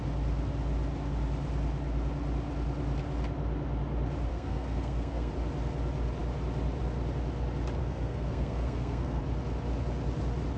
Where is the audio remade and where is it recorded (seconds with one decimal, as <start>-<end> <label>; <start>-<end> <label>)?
0.0-4.3 recorded; 4.3-5.3 remade; 5.3-7.8 recorded; 7.8-9.2 remade; 9.2-10.6 recorded